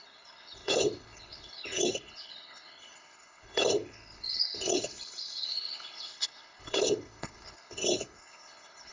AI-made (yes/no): yes